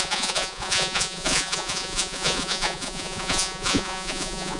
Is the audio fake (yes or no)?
yes